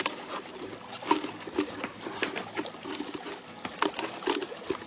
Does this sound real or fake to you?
real